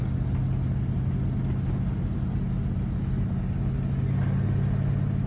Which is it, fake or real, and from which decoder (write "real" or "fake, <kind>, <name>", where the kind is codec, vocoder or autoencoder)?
real